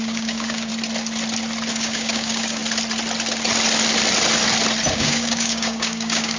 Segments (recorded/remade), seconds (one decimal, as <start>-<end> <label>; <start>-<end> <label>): 0.0-0.7 remade; 0.7-1.7 recorded; 1.7-2.6 remade; 2.6-4.9 recorded; 4.9-6.4 remade